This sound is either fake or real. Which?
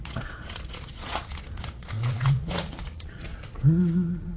fake